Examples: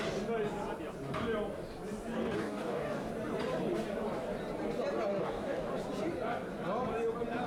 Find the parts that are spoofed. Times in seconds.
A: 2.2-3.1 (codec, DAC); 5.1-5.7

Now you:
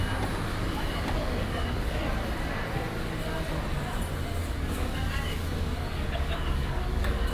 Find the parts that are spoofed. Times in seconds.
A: 0.5-2.0 (codec, DAC); 4.4-7.3

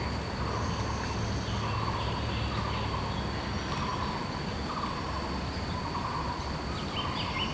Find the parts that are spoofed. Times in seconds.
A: none

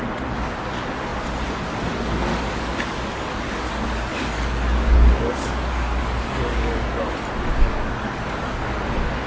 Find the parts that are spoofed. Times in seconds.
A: 2.3-7.1 (codec, DAC); 7.6-8.8

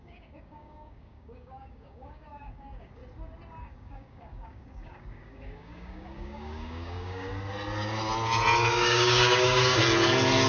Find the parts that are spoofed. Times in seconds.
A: 0.0-3.0 (codec, DAC); 3.6-7.3; 8.7-9.8

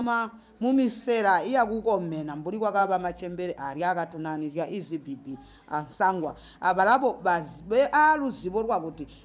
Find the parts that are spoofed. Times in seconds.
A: 0.0-1.0 (codec, DAC); 2.8-6.8

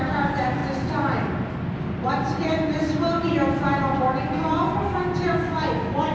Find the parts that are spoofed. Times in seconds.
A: none

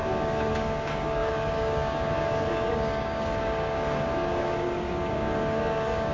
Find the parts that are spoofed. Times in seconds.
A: 0.0-6.1 (codec, DAC)